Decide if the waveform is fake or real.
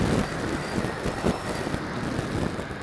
real